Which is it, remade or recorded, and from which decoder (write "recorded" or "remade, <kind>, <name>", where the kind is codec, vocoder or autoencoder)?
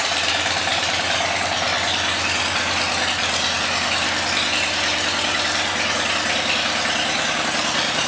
recorded